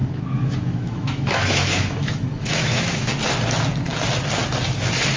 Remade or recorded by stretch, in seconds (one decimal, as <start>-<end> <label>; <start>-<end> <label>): 0.0-3.1 remade; 3.1-5.2 recorded